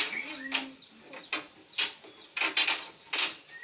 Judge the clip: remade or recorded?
recorded